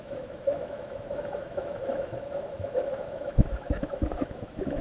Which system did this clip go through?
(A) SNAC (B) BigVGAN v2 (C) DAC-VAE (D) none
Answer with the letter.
C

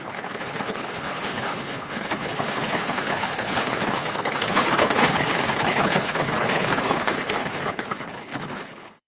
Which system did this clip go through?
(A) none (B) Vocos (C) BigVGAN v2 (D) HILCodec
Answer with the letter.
D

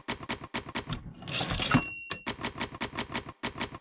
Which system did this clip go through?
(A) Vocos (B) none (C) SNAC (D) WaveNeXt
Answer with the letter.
B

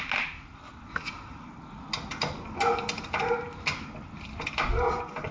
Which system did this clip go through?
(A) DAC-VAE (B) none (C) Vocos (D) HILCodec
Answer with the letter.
B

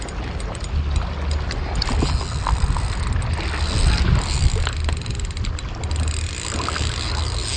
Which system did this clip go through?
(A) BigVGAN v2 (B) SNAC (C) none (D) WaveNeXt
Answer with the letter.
C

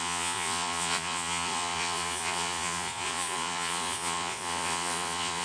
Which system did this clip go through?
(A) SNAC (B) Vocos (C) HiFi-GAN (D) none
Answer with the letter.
B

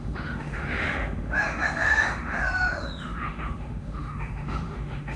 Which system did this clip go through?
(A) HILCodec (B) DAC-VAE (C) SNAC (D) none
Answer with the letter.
B